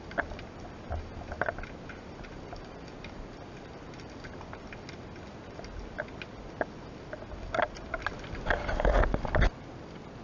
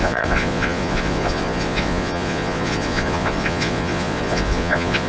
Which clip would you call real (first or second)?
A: first